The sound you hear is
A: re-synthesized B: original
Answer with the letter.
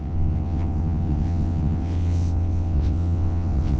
A